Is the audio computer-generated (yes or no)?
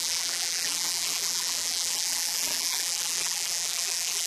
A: yes